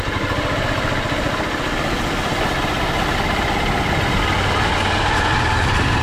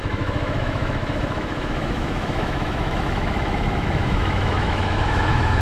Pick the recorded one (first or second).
first